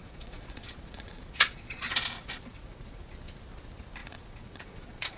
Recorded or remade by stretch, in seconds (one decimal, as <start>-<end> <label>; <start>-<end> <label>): 0.0-3.1 remade; 3.1-4.0 recorded; 4.0-5.2 remade